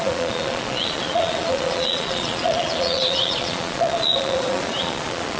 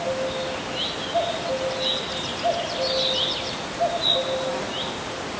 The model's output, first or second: first